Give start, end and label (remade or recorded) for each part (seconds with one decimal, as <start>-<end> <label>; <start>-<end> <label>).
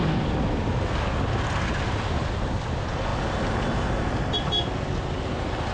0.0-5.7 recorded